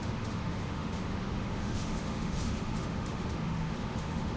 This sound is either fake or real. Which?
fake